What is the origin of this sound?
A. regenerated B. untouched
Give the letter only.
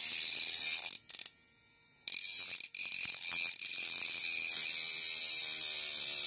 B